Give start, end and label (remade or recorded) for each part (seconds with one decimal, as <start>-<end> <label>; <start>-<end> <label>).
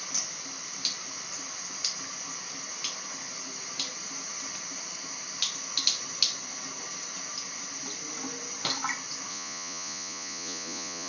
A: 0.0-9.3 recorded; 9.3-11.1 remade